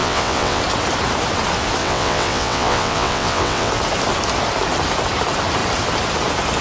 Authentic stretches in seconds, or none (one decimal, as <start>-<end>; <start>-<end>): 0.6-1.8; 3.7-6.6